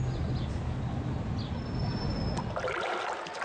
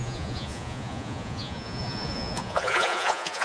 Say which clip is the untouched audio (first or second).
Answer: first